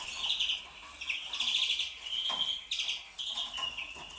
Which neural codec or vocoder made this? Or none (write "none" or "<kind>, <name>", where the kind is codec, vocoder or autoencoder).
none